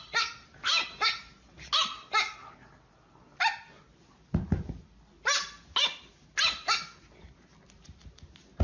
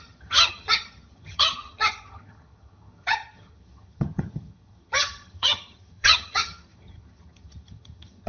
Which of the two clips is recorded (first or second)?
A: first